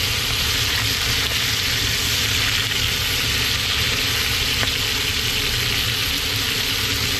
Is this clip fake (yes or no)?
no